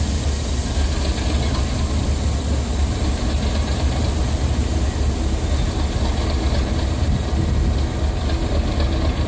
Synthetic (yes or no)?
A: no